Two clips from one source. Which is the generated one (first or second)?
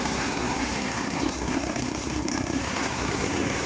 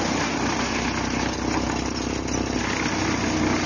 first